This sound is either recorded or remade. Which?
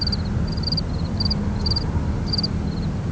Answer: recorded